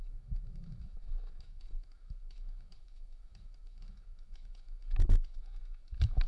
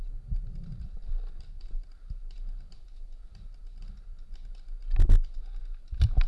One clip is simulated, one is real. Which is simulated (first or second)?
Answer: first